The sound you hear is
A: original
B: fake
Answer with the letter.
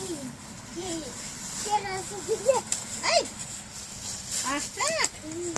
A